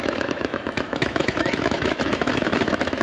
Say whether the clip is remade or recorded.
remade